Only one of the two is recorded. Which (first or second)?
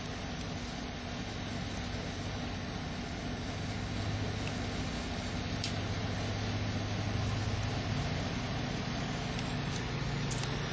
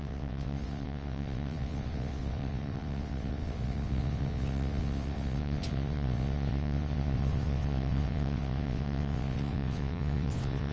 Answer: first